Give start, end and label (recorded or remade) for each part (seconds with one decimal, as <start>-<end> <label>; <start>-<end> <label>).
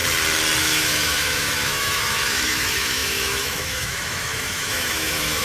0.0-0.6 recorded; 0.6-5.4 remade